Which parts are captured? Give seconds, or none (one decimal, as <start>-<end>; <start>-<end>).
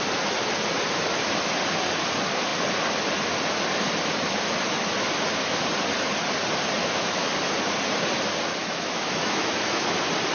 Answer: 0.0-6.8; 7.3-8.6; 9.8-10.3